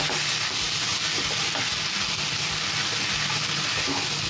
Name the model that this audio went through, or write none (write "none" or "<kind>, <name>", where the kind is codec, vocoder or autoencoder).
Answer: none